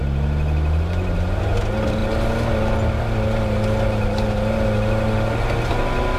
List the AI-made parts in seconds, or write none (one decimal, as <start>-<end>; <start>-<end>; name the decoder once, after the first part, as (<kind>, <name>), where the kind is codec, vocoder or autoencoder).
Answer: none